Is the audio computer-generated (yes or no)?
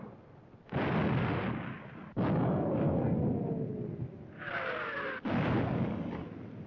no